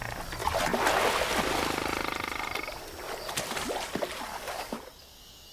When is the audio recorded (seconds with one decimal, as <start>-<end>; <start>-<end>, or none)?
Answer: 0.0-4.3

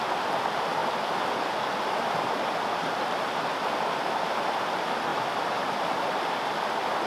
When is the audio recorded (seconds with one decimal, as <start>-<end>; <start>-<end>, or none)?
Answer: 0.0-7.1

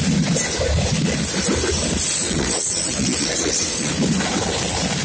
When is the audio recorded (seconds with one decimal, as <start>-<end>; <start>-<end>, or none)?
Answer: 0.0-2.2; 3.9-5.0